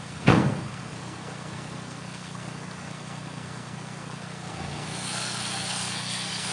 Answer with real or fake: fake